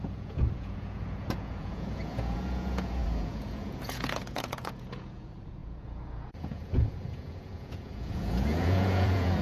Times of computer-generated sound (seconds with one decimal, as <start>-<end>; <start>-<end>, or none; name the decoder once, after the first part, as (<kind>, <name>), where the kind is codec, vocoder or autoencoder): 0.0-9.4 (vocoder, Vocos)